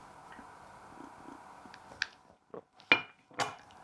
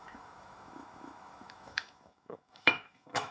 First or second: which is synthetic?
second